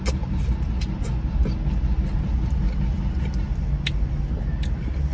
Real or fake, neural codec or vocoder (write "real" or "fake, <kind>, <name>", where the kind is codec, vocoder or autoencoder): real